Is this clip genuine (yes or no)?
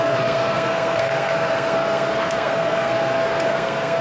no